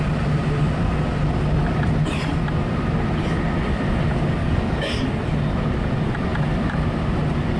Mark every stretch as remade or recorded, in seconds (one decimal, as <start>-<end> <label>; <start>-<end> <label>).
0.0-4.4 recorded; 4.4-5.0 remade; 5.0-7.6 recorded